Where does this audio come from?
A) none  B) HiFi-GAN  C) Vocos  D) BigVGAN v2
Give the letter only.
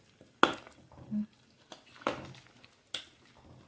A